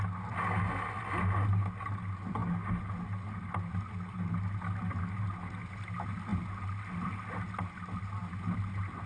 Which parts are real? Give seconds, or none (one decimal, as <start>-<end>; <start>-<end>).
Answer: 0.0-9.1